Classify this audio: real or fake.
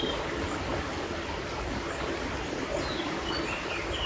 real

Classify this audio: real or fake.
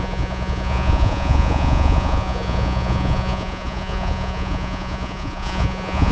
fake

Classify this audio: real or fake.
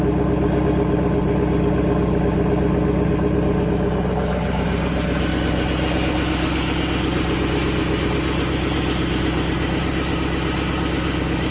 real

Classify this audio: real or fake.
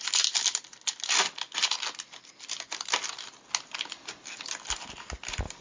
real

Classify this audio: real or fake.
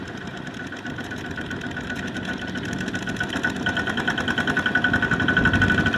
real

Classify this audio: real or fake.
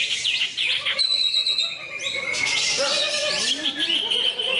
real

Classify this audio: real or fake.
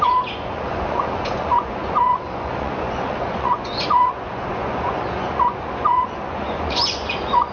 fake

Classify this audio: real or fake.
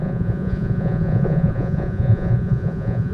fake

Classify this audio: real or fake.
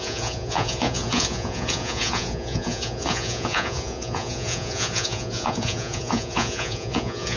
fake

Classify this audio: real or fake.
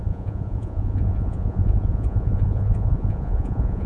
fake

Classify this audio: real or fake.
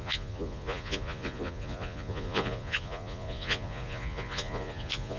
fake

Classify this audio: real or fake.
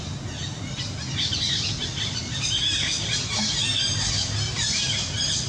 real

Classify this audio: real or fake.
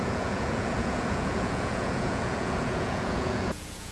fake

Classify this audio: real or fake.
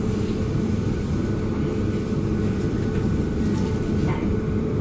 real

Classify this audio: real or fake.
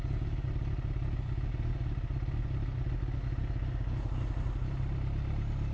real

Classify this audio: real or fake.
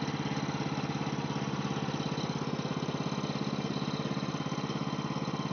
real